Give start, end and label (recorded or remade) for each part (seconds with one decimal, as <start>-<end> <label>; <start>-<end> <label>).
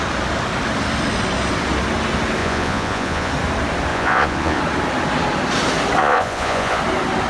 0.0-2.4 recorded; 2.4-3.3 remade; 3.3-3.9 recorded; 3.9-4.6 remade; 4.6-6.0 recorded; 6.0-6.8 remade; 6.8-7.3 recorded